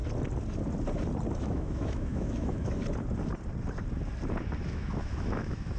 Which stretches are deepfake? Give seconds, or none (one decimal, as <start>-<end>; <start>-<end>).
1.4-2.8; 4.7-5.8